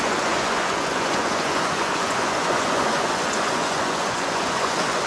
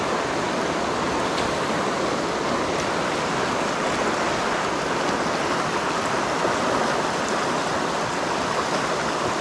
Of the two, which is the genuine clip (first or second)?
second